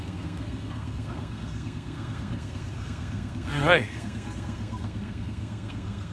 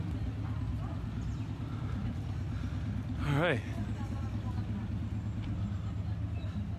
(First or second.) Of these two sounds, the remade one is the first